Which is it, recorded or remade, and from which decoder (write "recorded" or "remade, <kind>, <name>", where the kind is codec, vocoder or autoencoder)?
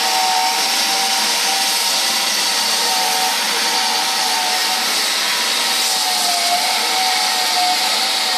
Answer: recorded